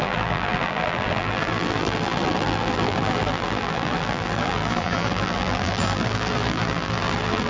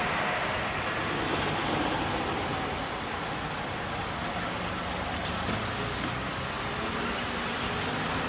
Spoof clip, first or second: first